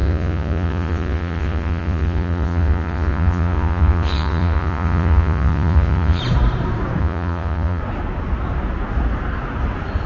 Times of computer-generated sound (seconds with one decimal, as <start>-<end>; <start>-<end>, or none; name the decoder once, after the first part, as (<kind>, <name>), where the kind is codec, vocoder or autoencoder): 0.0-6.2 (vocoder, Vocos); 7.0-7.8